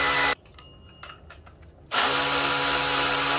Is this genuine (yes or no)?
yes